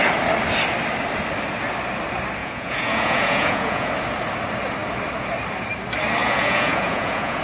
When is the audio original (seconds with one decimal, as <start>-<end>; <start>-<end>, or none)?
0.0-2.4; 3.9-6.2